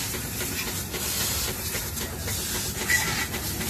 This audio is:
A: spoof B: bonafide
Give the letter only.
B